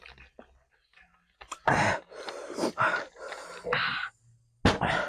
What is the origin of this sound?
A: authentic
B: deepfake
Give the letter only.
A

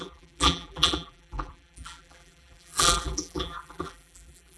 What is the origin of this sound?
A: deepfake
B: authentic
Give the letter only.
A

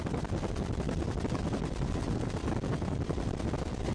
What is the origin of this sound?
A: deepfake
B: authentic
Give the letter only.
B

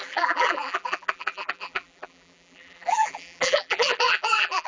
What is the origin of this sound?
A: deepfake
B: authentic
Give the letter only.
A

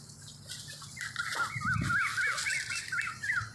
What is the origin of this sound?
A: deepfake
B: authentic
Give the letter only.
B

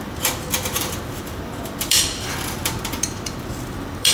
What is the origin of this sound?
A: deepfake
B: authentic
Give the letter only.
A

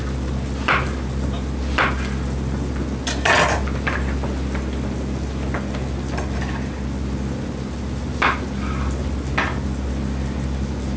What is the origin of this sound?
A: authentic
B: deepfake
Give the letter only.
A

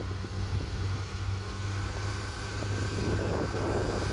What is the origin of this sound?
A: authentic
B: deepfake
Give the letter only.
A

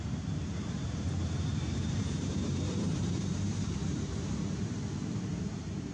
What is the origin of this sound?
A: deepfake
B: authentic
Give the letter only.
A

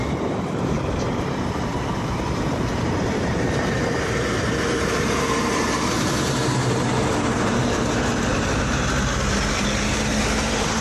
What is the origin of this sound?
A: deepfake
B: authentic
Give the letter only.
A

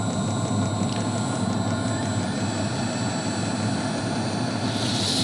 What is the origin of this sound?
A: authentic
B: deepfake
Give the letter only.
A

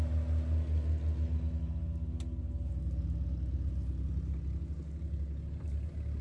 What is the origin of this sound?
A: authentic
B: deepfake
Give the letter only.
A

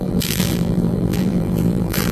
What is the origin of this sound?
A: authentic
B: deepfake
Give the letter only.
B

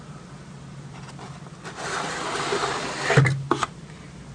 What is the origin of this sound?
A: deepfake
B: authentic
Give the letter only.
A